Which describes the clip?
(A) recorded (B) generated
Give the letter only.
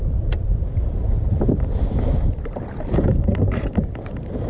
A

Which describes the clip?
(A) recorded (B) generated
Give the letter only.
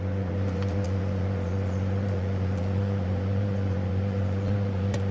B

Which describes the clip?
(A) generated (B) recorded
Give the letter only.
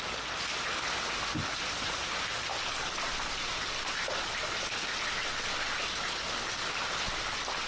B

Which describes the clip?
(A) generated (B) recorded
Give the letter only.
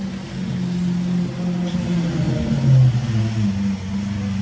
B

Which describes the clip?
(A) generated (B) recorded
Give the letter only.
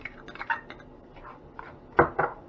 B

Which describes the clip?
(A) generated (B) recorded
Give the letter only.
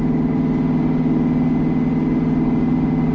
B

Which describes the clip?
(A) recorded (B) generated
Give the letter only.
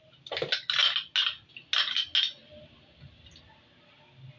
A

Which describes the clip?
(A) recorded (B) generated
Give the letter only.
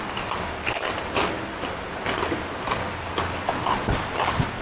A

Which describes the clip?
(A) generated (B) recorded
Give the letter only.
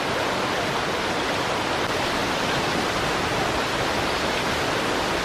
B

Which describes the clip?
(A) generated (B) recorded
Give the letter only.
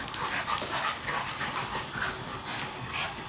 B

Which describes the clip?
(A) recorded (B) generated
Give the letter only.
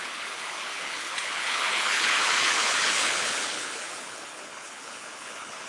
B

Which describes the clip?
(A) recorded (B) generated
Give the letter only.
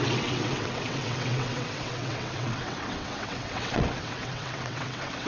B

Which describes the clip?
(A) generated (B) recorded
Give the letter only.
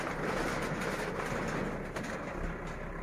B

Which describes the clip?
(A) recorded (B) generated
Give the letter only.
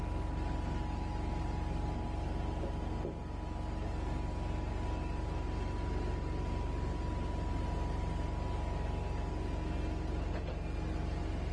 A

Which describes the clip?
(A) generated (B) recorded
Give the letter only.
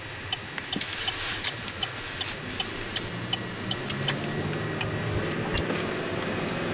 B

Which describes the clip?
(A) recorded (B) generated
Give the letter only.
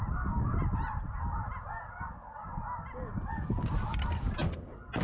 A